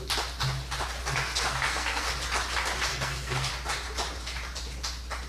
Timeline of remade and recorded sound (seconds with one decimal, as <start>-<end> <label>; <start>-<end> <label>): 0.0-1.0 recorded; 1.0-2.1 remade; 2.1-2.9 recorded; 2.9-3.5 remade; 3.5-5.3 recorded